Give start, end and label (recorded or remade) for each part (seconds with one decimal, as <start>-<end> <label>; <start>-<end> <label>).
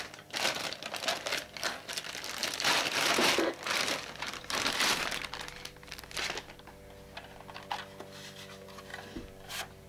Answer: 0.0-2.4 recorded; 2.4-4.9 remade; 4.9-9.9 recorded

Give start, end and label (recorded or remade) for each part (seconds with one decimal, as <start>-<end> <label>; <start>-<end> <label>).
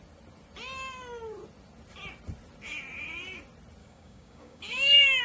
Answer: 0.0-3.8 recorded; 3.8-5.2 remade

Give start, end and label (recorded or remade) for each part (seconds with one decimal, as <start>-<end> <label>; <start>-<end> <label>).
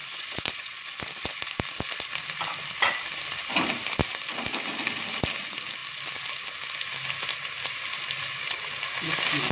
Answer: 0.0-1.0 remade; 1.0-9.5 recorded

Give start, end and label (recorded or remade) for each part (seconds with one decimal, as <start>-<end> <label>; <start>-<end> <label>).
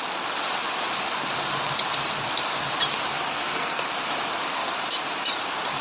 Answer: 0.0-3.3 recorded; 3.3-3.8 remade; 3.8-5.8 recorded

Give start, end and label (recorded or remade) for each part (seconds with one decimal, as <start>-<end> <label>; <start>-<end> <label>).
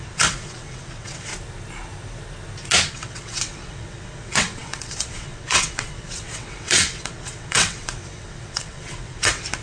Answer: 0.0-1.3 remade; 1.3-2.9 recorded; 2.9-9.6 remade